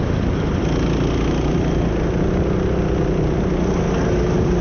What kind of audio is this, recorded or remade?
recorded